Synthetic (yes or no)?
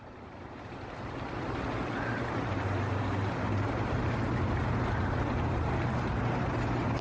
yes